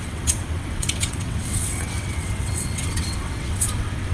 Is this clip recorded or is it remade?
remade